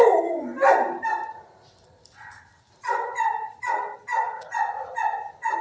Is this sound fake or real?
real